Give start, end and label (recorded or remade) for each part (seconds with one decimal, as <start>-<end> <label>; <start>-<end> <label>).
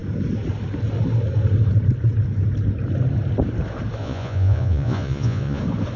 0.0-4.0 recorded; 4.0-5.6 remade; 5.6-6.0 recorded